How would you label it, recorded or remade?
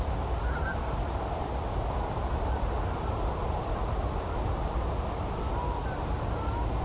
recorded